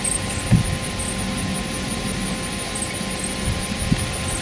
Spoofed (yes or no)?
no